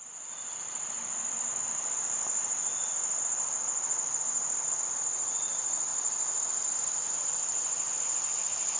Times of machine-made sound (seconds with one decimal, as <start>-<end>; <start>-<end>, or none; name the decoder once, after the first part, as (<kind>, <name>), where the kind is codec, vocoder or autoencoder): none